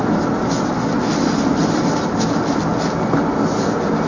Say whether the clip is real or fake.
real